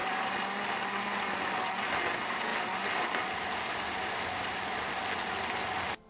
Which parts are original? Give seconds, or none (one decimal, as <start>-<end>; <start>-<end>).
0.0-6.1